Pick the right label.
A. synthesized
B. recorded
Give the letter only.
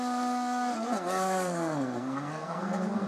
A